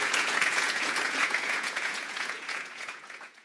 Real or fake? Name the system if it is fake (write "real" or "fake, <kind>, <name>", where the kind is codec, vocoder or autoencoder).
fake, vocoder, Vocos